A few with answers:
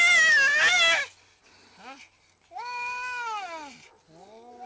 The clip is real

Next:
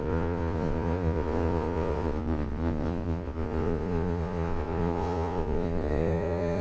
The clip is fake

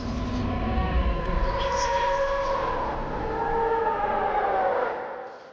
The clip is real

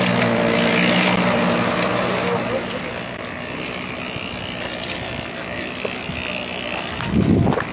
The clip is real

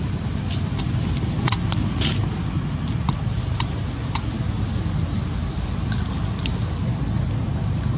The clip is real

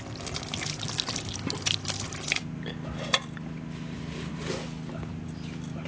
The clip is real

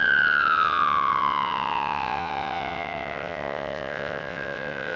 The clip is fake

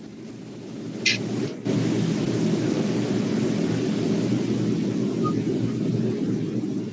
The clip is real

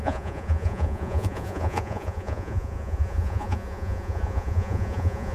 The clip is fake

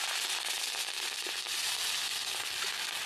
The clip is real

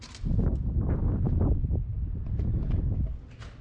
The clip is real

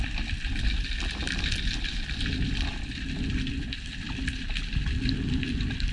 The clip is real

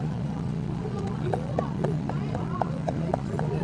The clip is fake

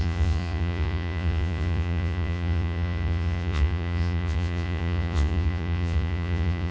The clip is fake